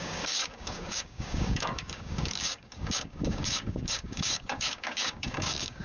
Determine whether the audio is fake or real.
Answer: fake